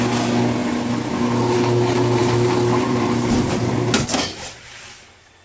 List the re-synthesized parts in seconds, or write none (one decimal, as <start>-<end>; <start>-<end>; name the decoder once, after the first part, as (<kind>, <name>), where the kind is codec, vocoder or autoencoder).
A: 2.2-4.6 (vocoder, BigVGAN v2)